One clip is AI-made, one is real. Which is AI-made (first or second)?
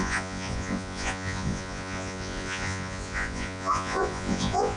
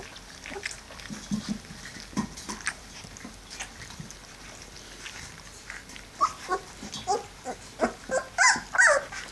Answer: first